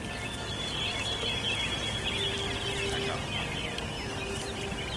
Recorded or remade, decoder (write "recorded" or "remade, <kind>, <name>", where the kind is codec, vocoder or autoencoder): recorded